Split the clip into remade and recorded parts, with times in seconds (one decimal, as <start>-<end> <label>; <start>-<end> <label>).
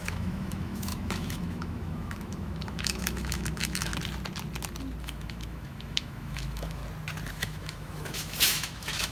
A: 0.0-3.9 remade; 3.9-5.0 recorded; 5.0-6.8 remade; 6.8-7.3 recorded; 7.3-9.1 remade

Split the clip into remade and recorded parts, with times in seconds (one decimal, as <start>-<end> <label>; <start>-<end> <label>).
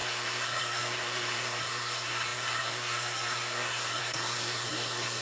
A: 0.0-5.2 remade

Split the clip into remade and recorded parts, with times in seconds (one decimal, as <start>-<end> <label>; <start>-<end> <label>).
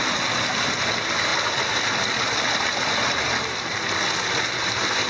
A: 0.0-5.1 recorded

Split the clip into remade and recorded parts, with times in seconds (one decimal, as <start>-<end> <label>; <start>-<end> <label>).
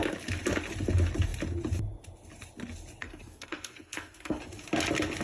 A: 0.0-3.0 recorded; 3.0-4.4 remade; 4.4-5.2 recorded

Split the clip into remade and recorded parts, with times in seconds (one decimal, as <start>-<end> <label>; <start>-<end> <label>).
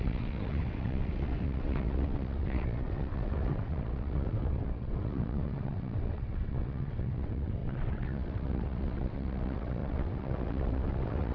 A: 0.0-11.3 remade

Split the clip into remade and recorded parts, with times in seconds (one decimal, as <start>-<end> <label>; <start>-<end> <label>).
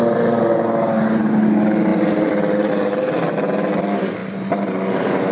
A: 0.0-5.3 recorded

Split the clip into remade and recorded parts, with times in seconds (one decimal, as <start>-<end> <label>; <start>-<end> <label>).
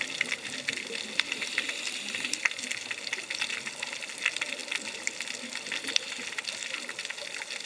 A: 0.0-7.7 recorded